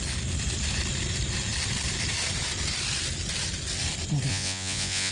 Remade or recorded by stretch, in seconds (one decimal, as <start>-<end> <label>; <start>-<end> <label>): 0.0-4.3 recorded; 4.3-5.1 remade